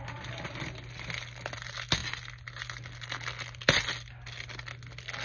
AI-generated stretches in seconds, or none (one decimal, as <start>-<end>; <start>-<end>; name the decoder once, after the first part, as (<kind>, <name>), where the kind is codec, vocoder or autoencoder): none

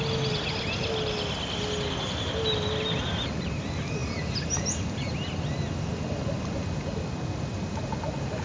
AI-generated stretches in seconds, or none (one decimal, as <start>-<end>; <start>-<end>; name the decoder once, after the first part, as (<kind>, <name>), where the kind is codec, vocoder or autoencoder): none